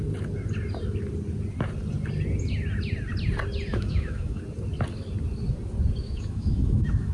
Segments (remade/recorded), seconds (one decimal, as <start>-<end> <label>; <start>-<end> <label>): 0.0-3.7 recorded; 3.7-4.4 remade; 4.4-6.0 recorded; 6.0-7.1 remade